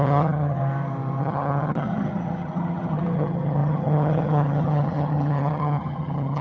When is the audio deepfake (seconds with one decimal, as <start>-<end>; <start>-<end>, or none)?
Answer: 0.0-0.6; 1.2-6.4